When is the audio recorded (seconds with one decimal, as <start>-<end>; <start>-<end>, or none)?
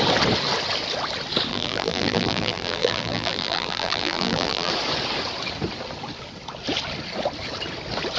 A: 0.0-1.5; 4.7-8.2